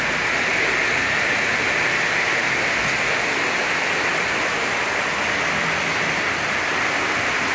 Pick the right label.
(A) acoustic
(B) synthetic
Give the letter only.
A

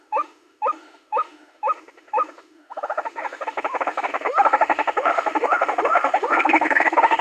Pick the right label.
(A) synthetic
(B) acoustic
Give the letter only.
A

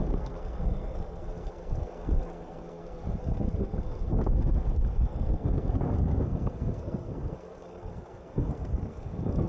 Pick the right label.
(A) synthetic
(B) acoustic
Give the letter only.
A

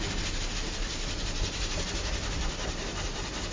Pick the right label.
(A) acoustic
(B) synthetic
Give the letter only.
A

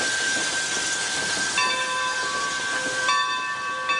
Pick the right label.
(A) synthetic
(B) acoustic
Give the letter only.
B